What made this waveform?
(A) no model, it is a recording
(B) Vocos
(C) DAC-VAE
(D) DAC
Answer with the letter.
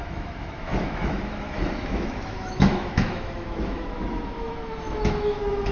C